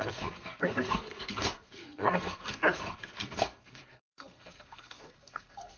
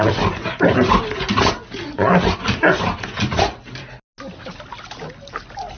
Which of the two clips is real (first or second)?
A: second